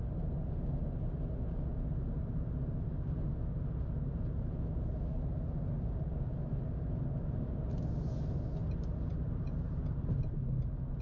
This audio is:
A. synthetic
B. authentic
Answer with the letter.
B